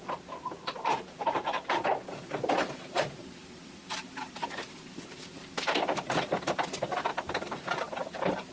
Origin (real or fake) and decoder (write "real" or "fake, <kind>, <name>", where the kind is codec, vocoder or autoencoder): fake, vocoder, BigVGAN v2